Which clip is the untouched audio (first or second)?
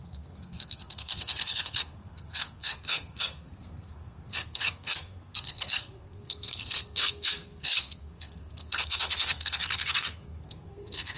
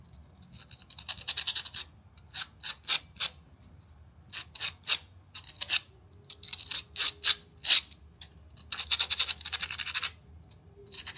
second